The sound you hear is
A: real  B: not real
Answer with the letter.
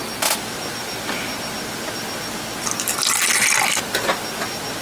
A